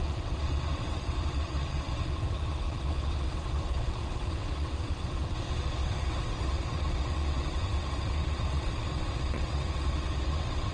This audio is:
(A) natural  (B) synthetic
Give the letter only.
B